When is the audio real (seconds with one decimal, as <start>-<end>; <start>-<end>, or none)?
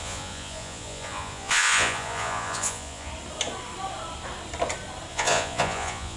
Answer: 3.1-5.1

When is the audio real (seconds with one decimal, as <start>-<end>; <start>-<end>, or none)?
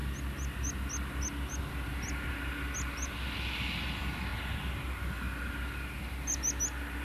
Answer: 0.0-7.0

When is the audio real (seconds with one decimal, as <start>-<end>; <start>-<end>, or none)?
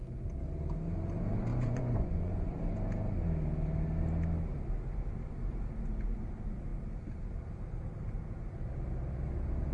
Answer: 0.0-1.5; 2.6-9.7